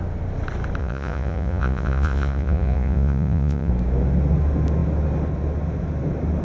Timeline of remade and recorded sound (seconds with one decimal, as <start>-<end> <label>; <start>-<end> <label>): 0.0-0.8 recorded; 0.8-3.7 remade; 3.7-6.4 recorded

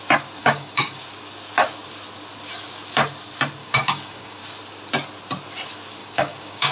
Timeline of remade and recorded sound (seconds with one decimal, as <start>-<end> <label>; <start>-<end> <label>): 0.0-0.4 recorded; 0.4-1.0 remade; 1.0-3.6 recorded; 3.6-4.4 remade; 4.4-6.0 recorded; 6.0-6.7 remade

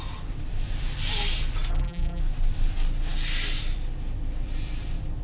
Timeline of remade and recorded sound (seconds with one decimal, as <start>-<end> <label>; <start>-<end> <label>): 0.0-1.7 recorded; 1.7-2.2 remade; 2.2-5.2 recorded

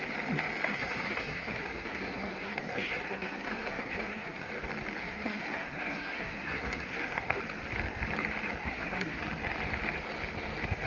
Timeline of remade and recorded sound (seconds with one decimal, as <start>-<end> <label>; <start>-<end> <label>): 0.0-0.7 recorded; 0.7-4.5 remade; 4.5-5.0 recorded; 5.0-7.4 remade; 7.4-8.6 recorded; 8.6-9.2 remade; 9.2-10.9 recorded

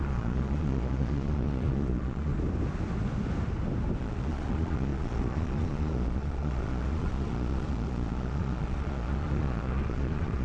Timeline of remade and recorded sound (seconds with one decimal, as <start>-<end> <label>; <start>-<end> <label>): 0.0-2.3 remade; 2.3-4.0 recorded; 4.0-10.4 remade